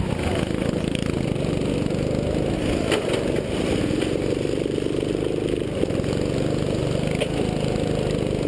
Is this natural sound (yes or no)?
yes